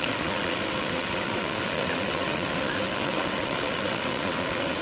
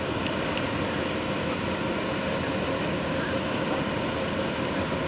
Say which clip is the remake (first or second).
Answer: first